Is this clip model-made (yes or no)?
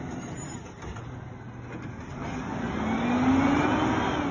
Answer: no